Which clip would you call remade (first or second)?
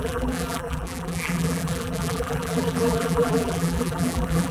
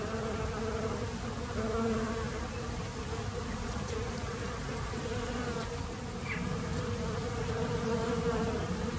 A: first